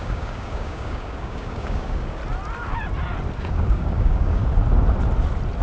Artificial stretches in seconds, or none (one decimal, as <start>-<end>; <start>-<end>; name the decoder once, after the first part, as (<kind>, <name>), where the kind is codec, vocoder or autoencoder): 0.0-2.2 (codec, DAC); 3.4-4.4